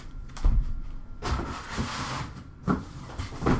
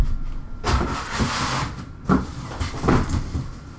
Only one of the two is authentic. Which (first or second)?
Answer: second